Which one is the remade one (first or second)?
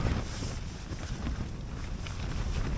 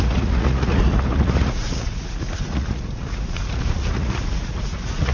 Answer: second